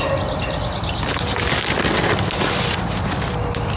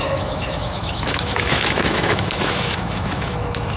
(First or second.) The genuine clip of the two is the first